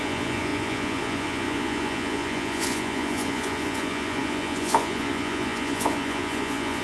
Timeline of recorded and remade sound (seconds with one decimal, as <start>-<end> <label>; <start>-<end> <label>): 0.0-6.8 remade